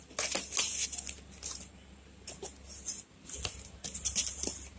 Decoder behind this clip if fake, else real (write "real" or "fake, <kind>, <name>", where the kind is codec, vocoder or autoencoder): real